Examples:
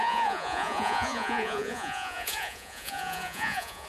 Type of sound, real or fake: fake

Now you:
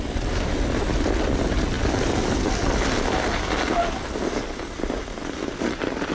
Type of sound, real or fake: real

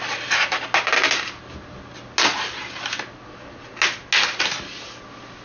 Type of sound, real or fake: real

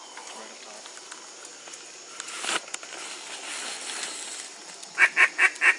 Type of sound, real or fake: real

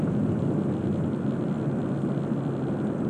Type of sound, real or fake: real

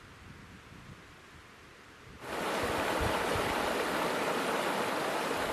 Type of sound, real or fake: real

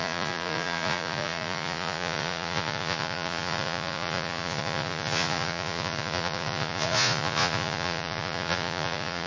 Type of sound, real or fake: fake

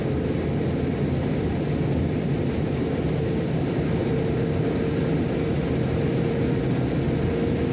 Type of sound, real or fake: real